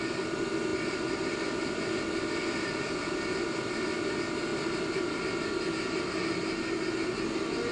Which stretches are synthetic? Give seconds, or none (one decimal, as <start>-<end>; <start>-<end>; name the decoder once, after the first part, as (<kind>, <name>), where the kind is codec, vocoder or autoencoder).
0.7-4.1 (vocoder, BigVGAN v2); 4.5-5.2